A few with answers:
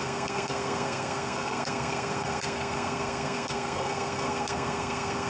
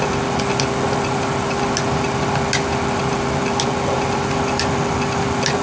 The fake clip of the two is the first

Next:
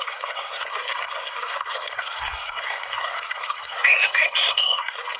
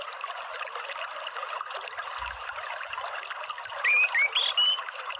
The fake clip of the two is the first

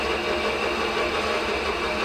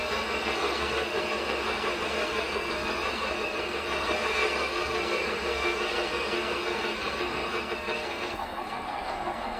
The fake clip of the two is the second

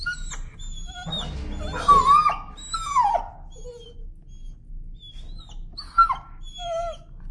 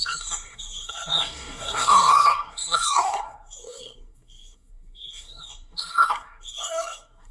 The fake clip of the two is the second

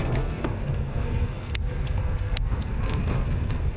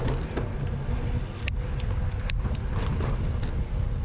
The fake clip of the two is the first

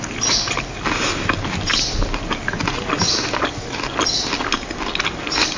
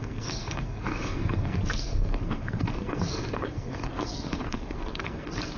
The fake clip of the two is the second